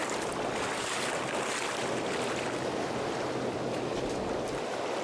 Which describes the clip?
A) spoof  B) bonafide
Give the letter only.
B